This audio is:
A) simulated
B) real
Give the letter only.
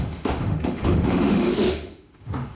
A